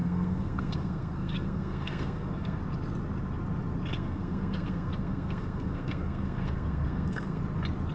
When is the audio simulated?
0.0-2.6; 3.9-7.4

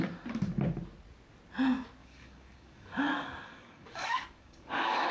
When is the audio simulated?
2.0-5.1

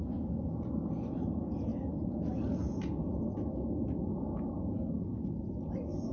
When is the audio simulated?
none

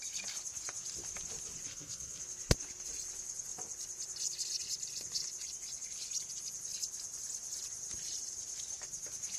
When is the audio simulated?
1.7-2.2